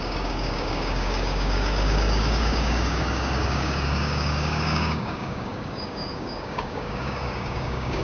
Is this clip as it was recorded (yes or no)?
no